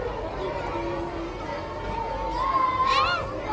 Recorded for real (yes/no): yes